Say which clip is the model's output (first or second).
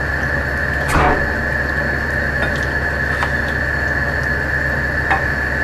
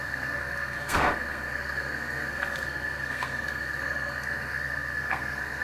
second